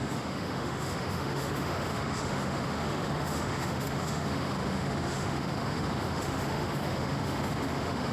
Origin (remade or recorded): remade